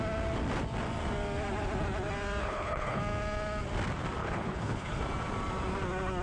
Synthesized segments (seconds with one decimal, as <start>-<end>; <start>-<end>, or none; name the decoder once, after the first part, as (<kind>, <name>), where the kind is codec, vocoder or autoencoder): 2.4-3.0 (codec, HILCodec); 4.2-5.0